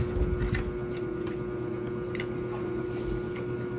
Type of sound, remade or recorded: recorded